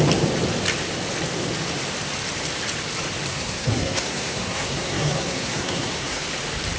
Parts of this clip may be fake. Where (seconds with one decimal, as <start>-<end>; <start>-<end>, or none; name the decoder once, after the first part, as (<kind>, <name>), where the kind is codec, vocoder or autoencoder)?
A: 3.3-6.2 (codec, SNAC)